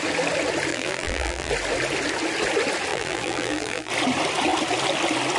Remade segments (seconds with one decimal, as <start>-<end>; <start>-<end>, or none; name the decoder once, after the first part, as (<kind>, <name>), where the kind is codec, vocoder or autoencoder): 0.7-1.5 (vocoder, BigVGAN v2); 2.9-3.9